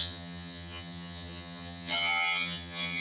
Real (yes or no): no